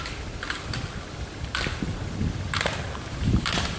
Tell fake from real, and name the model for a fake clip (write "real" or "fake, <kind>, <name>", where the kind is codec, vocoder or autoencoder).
real